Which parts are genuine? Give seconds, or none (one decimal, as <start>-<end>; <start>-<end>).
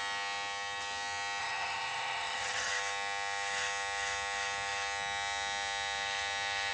0.0-1.4; 2.7-6.7